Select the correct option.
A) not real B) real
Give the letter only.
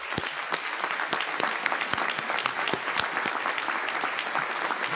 B